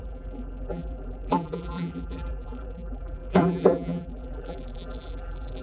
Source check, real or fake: fake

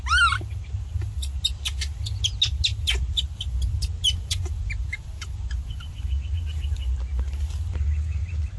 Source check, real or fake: real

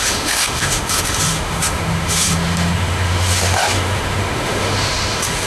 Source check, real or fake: fake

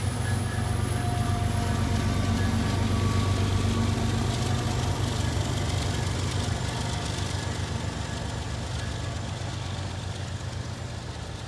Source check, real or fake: real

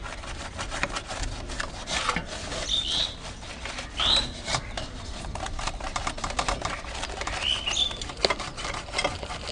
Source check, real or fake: real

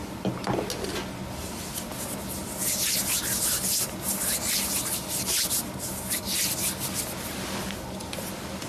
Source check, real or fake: real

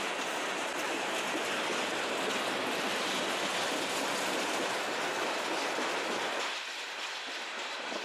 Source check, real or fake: real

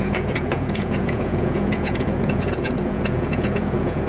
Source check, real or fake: fake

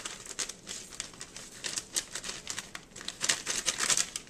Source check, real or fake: real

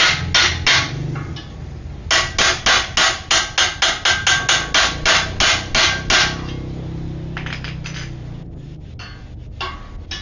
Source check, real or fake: real